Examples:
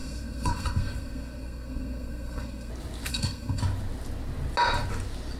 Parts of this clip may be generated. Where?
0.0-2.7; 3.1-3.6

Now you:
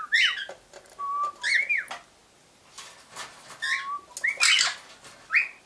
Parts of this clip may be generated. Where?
none

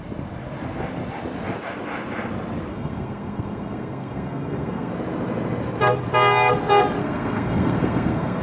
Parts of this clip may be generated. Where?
2.7-4.9; 7.0-8.4

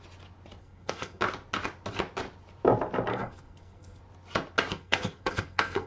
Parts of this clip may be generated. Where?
0.6-1.2; 3.1-4.0; 4.7-5.9